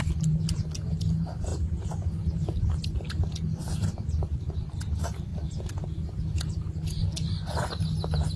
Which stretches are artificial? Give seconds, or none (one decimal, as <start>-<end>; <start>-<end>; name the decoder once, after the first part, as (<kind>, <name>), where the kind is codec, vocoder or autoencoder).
none